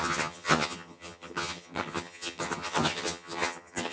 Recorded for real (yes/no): no